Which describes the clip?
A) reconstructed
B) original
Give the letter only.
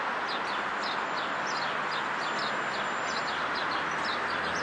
B